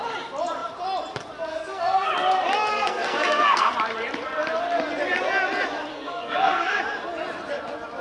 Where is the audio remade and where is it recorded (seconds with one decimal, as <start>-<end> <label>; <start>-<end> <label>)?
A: 0.0-1.5 recorded; 1.5-2.1 remade; 2.1-2.7 recorded; 2.7-3.7 remade; 3.7-5.9 recorded; 5.9-6.8 remade; 6.8-8.0 recorded